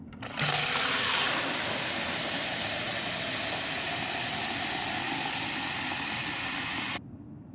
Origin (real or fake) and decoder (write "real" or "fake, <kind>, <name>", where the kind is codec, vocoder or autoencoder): real